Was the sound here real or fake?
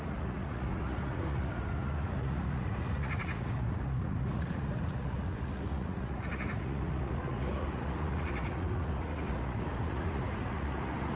fake